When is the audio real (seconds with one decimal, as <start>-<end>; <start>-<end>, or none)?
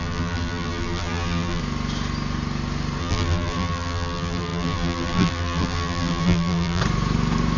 1.6-3.0; 6.8-7.6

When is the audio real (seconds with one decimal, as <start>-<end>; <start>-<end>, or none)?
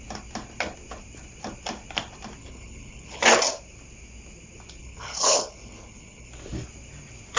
0.0-2.4; 3.2-4.8; 6.3-7.4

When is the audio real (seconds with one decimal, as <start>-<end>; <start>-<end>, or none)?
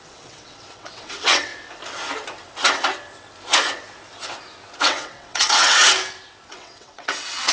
1.5-4.8; 5.8-6.5